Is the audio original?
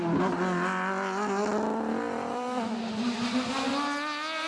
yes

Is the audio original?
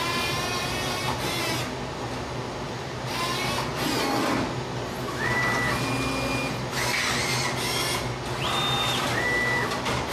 yes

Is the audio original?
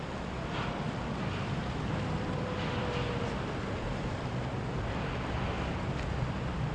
yes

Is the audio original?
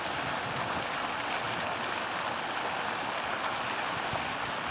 yes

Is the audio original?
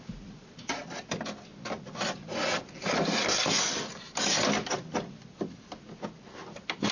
yes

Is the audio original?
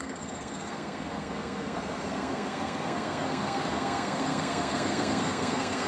no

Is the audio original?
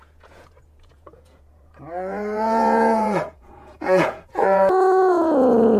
no